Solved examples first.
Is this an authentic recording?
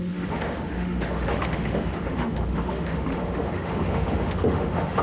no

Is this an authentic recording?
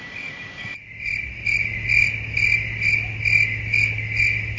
yes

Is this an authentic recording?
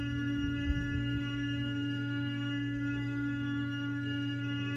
no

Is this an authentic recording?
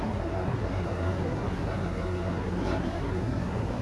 no